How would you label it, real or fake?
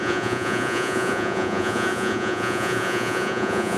fake